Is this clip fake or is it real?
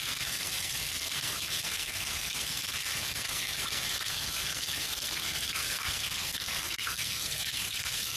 fake